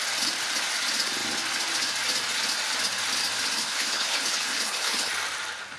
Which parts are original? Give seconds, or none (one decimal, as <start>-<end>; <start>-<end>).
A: 0.0-3.6; 5.1-5.8